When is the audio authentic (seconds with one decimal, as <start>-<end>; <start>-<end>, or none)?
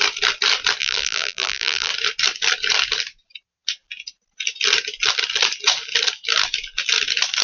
0.0-0.8; 1.9-7.4